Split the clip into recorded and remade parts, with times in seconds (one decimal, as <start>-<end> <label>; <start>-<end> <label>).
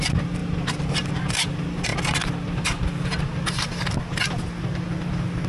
0.0-5.5 recorded